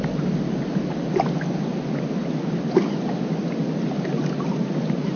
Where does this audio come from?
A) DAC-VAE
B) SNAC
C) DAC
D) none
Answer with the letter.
D